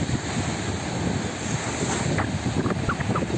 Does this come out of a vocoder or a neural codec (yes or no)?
no